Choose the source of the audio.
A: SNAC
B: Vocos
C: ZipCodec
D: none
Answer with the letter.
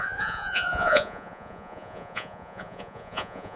B